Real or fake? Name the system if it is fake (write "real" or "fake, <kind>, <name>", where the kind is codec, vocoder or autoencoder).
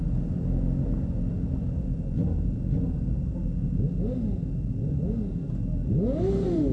real